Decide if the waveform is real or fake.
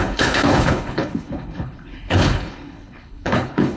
fake